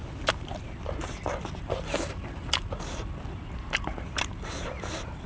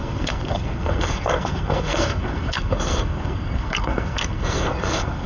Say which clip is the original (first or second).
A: first